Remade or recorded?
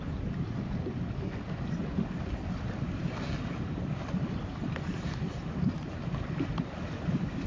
recorded